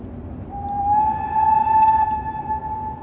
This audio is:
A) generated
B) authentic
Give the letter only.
B